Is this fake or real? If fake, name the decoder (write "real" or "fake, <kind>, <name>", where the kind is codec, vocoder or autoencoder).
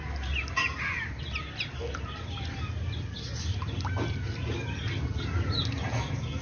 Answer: real